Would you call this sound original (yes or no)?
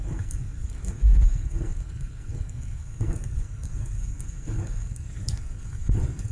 no